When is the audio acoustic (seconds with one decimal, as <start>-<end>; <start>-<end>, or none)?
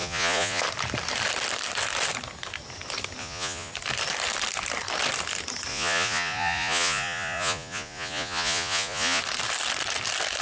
0.6-3.2; 3.7-5.7; 9.2-10.4